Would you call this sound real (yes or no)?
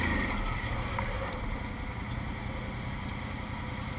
yes